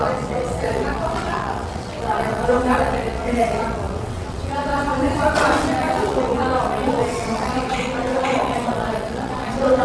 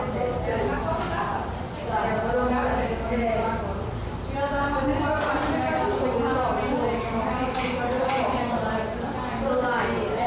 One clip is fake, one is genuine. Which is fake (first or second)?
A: first